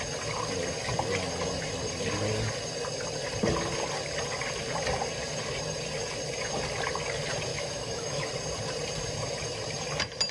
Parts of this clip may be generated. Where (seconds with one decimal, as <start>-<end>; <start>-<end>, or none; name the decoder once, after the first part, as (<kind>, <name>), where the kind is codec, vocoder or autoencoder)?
7.5-8.3 (autoencoder, DAC-VAE)